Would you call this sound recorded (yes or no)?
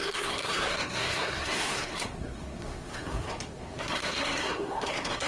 no